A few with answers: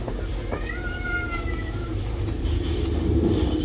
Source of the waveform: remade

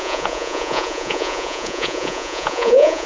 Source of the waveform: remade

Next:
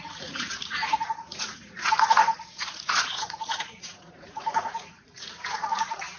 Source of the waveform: remade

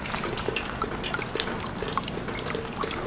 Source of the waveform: recorded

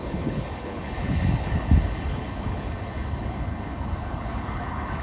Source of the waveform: remade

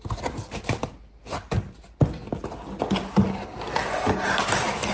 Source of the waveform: recorded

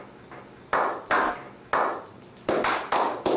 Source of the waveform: recorded